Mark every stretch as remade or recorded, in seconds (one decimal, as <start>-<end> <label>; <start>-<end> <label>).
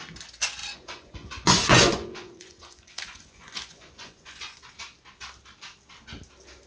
0.0-0.6 recorded; 0.6-4.6 remade; 4.6-6.7 recorded